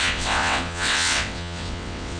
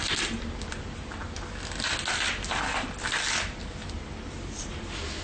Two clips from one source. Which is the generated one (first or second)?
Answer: first